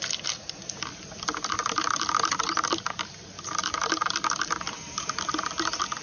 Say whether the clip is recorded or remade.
recorded